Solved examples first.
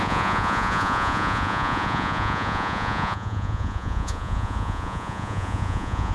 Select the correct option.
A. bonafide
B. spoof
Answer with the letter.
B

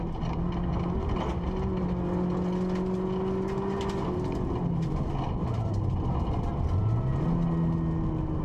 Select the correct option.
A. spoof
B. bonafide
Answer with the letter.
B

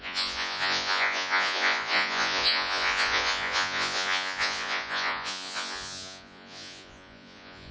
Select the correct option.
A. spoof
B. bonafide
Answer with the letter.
A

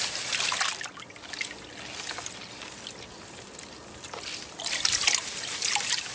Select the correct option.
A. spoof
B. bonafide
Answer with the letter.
B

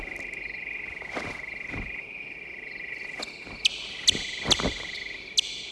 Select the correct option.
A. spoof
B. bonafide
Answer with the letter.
B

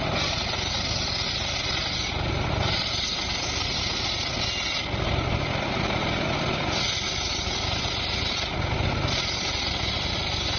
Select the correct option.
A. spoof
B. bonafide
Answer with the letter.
B